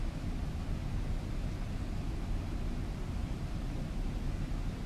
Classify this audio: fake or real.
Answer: real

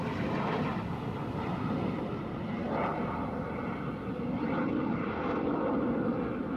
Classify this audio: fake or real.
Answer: real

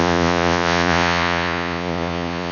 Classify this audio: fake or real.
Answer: fake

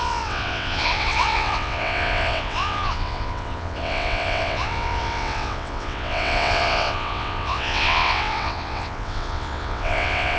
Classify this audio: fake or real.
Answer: fake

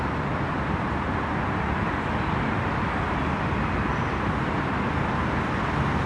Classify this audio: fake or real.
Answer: real